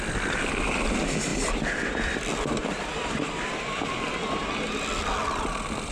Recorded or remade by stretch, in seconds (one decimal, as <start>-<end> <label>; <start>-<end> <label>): 0.0-5.9 recorded